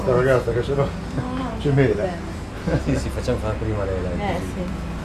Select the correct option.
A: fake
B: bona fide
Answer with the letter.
B